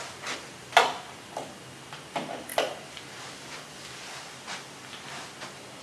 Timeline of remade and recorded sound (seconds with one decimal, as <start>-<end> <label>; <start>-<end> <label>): 0.0-5.8 recorded